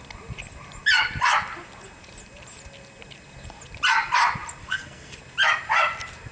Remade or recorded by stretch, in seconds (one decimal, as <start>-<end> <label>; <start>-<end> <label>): 0.0-4.6 recorded; 4.6-5.2 remade; 5.2-6.3 recorded